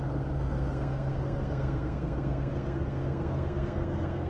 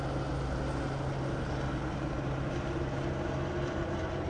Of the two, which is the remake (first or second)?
first